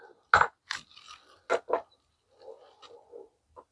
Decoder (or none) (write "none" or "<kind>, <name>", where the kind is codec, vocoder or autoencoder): none